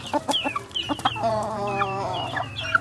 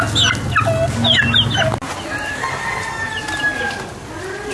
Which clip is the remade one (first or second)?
first